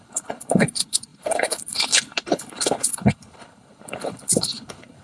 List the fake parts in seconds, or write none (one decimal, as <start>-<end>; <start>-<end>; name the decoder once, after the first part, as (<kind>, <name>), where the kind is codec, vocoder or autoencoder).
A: 0.0-5.0 (codec, HILCodec)